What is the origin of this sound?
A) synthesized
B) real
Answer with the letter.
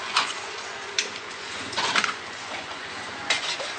A